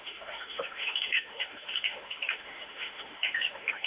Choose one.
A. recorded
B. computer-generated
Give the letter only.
B